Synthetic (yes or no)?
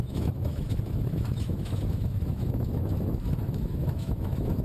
yes